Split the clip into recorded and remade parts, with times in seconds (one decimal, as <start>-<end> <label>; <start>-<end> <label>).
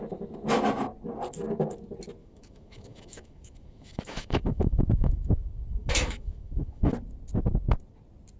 0.0-2.2 recorded; 2.2-6.9 remade; 6.9-8.4 recorded